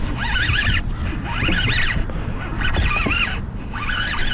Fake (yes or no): no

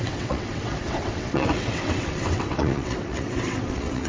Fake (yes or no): yes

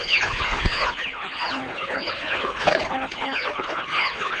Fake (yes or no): yes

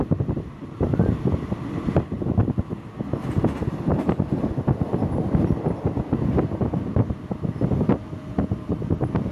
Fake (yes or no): no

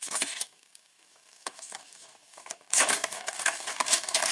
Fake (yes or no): yes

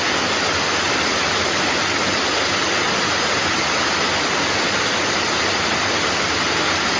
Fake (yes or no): no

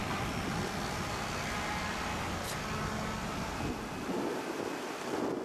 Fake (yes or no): no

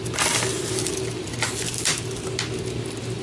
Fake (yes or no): no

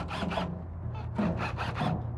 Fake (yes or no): no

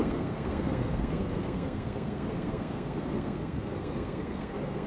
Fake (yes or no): yes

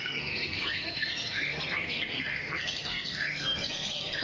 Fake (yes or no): yes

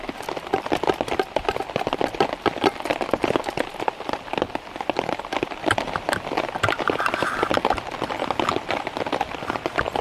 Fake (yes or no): no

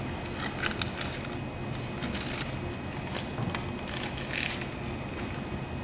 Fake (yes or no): no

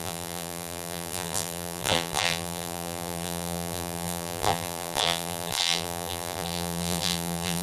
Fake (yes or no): yes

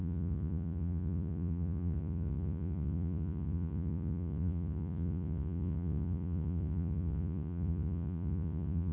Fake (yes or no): yes